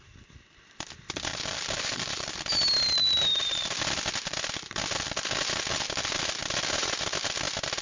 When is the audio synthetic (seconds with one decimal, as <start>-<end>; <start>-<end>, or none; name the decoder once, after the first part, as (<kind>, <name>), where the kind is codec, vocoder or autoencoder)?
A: 1.3-2.5 (vocoder, BigVGAN v2); 3.3-3.8